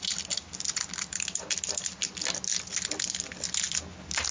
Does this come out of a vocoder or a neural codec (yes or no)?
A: no